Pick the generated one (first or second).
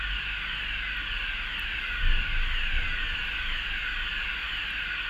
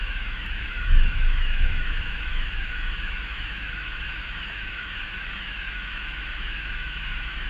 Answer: second